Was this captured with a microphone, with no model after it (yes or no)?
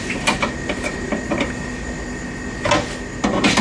yes